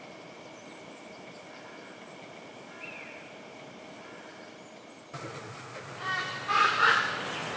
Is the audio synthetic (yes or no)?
no